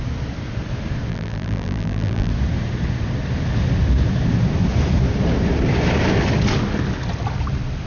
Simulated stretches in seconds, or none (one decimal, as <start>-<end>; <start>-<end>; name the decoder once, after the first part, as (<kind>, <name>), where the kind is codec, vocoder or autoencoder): 1.1-2.3 (vocoder, BigVGAN v2)